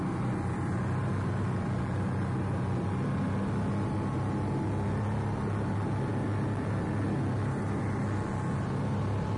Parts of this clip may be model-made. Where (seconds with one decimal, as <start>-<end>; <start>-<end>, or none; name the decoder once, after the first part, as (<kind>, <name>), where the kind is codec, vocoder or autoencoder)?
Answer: none